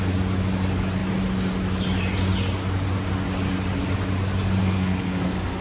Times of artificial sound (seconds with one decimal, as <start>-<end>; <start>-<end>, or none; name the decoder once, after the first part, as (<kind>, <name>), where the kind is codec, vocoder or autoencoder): 4.6-5.6 (codec, SNAC)